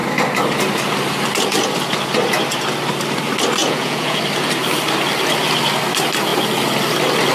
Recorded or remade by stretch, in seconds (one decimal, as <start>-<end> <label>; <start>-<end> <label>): 0.0-3.6 recorded; 3.6-4.2 remade; 4.2-7.3 recorded